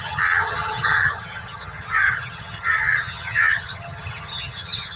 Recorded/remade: remade